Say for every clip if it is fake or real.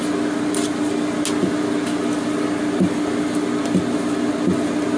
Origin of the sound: real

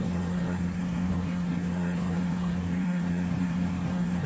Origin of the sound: fake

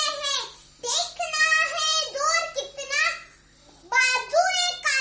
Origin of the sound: real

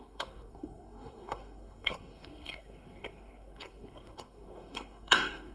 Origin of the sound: fake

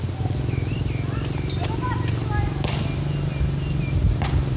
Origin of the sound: real